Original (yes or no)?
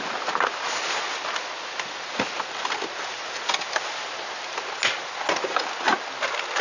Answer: yes